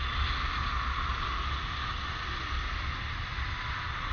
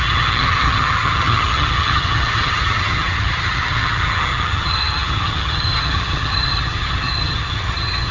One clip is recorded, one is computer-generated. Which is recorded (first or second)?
first